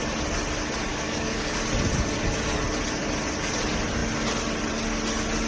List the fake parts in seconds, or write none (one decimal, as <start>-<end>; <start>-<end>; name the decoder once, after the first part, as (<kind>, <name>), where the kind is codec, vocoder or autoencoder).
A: 0.9-1.6 (codec, DAC)